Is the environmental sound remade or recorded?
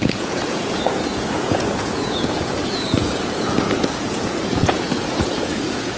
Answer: remade